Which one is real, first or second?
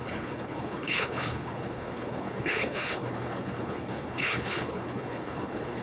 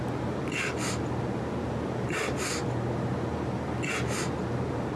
second